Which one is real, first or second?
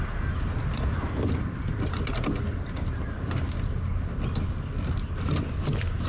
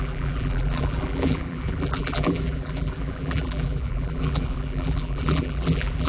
first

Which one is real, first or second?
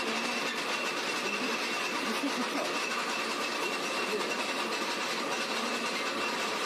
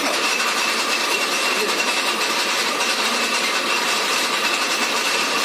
first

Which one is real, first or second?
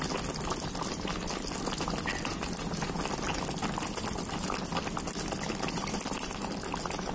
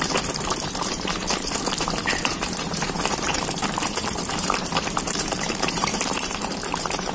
first